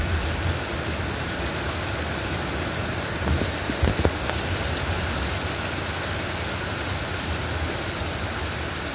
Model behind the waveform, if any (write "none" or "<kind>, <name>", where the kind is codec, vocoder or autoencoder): none